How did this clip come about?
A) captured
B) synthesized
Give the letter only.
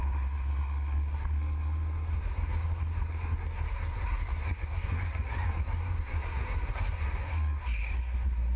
B